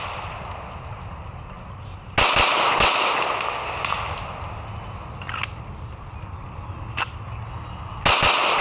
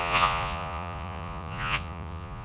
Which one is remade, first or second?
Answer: second